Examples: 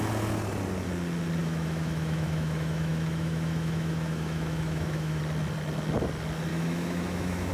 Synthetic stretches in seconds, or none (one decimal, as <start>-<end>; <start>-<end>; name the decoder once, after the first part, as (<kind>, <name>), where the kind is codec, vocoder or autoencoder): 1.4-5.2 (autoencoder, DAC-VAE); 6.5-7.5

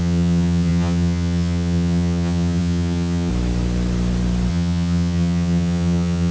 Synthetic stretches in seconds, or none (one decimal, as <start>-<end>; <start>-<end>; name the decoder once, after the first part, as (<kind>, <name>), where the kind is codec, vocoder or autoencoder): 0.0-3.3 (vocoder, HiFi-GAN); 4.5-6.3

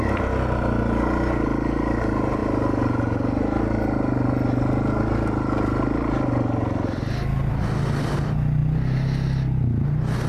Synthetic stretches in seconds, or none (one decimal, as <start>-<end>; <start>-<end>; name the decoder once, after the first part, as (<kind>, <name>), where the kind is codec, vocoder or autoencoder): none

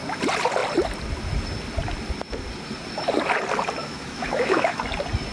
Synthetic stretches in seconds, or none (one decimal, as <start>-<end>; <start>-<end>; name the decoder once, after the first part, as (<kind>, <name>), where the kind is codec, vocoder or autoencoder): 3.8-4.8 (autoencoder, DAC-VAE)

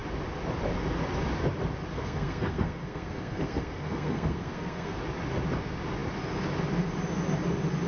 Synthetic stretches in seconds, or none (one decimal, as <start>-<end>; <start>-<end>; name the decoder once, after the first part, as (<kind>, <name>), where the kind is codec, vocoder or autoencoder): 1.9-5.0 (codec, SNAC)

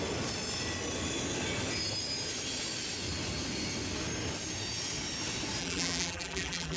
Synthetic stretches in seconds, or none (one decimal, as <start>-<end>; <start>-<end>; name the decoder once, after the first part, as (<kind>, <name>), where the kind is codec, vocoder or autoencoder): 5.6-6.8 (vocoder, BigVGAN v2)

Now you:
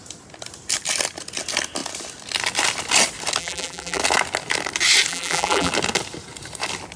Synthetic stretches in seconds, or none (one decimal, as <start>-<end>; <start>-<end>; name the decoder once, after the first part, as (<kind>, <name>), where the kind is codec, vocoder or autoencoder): 3.4-4.0 (vocoder, BigVGAN v2); 5.1-5.7